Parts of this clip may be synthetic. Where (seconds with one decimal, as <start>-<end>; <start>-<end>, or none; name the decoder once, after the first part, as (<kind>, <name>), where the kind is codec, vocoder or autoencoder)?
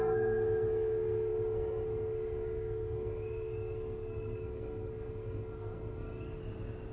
0.0-6.4 (codec, SNAC)